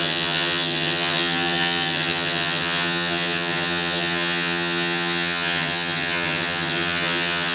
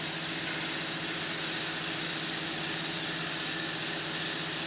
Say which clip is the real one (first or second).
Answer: second